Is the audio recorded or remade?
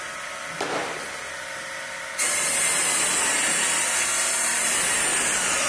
recorded